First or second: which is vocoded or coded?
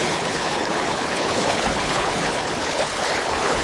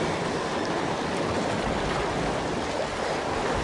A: first